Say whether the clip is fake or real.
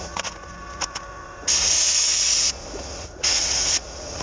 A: fake